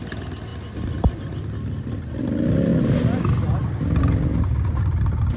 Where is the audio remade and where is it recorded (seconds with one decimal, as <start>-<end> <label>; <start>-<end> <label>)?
0.0-5.4 recorded

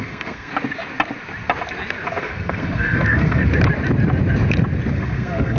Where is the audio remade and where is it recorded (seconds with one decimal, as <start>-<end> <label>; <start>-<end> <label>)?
0.0-0.5 remade; 0.5-2.2 recorded; 2.2-3.4 remade; 3.4-4.9 recorded; 4.9-5.6 remade